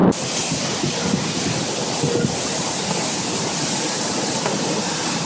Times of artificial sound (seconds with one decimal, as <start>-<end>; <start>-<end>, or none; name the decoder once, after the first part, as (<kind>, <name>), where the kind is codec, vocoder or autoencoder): none